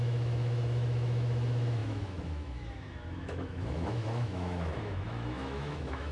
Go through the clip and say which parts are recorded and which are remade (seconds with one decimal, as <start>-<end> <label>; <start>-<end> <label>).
0.0-6.1 remade